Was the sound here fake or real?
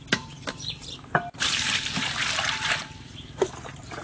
fake